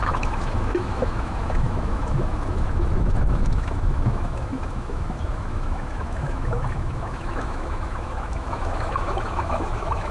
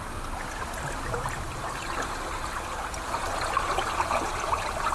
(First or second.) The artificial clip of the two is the first